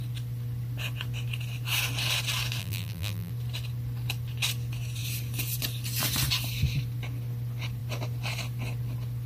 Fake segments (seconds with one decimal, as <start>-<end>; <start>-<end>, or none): 2.6-3.3